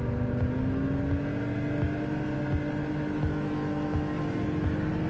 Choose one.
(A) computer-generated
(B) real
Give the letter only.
B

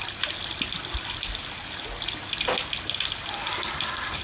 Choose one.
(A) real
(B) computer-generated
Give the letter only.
A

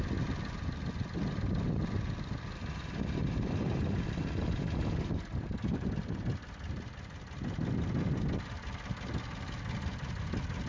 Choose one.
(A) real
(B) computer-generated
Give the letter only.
A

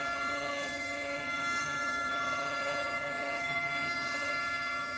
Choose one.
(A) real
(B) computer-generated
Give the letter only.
B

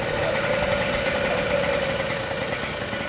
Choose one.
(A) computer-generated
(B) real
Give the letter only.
B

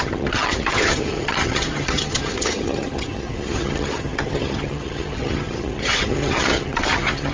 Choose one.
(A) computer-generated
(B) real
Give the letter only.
A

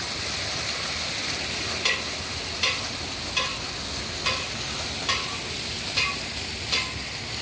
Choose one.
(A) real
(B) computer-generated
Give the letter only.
A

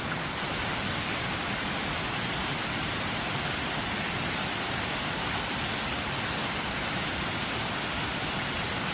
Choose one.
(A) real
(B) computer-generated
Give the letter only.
A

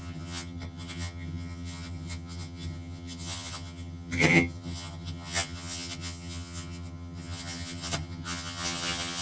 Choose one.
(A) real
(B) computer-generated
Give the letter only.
B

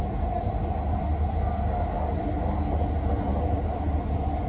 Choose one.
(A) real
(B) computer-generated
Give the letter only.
A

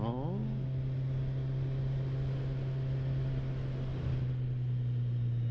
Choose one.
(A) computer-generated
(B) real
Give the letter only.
B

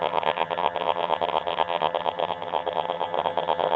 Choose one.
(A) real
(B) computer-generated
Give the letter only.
B